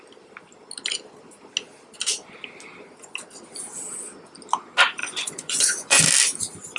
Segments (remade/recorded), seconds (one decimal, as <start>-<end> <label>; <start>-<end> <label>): 0.0-5.0 recorded; 5.0-6.0 remade; 6.0-6.8 recorded